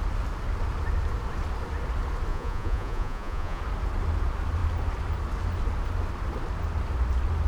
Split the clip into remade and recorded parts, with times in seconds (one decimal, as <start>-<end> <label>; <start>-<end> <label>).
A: 0.0-2.3 recorded; 2.3-3.6 remade; 3.6-7.5 recorded